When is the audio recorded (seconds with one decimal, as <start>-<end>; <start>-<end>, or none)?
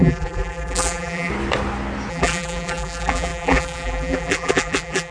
1.3-2.1